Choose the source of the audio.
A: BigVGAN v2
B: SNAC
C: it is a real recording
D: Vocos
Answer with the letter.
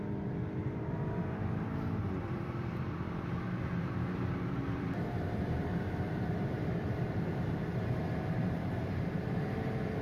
A